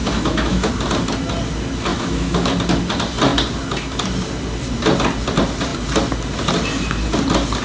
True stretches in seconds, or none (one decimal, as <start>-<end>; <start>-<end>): 0.7-1.9; 2.5-7.6